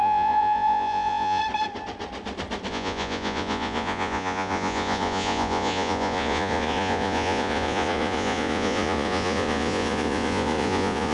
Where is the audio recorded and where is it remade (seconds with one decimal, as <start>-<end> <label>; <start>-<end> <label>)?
0.0-1.4 remade; 1.4-2.7 recorded; 2.7-11.1 remade